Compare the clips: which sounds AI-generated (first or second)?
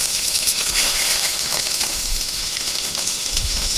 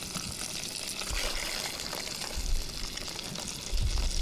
first